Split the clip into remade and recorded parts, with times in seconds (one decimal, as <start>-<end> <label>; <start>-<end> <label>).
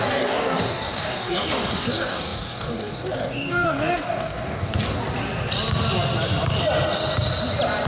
0.0-5.0 remade; 5.0-7.9 recorded